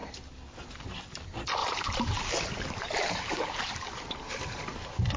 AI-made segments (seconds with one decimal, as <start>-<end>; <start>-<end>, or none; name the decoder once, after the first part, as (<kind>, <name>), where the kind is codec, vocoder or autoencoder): 1.6-4.6 (vocoder, BigVGAN v2)